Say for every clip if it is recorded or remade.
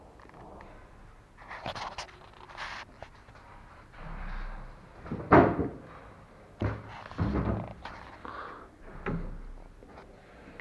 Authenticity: recorded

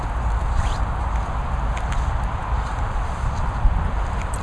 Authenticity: recorded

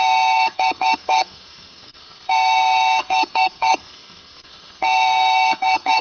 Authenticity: remade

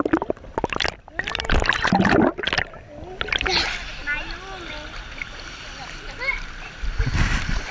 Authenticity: recorded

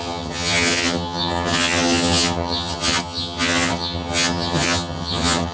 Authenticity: remade